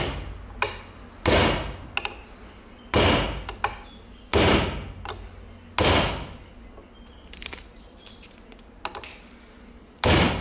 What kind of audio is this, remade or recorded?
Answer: recorded